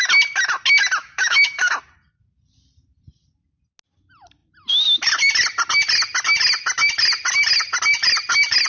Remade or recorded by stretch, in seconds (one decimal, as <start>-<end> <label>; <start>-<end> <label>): 0.0-1.0 recorded; 1.0-1.7 remade; 1.7-8.7 recorded